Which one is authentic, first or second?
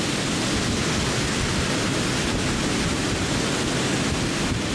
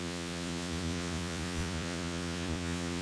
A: first